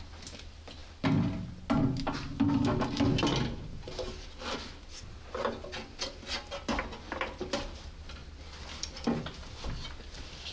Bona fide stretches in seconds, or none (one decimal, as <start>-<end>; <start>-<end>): 0.0-10.5

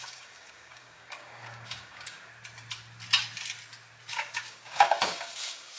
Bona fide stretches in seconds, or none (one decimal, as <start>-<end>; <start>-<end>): 2.3-4.1

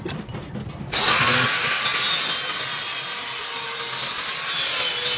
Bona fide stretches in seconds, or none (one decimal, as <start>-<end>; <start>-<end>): 0.0-5.2